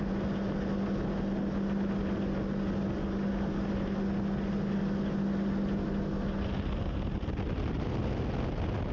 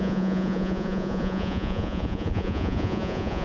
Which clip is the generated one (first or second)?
second